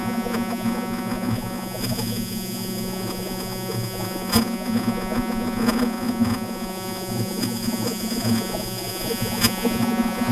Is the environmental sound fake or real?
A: fake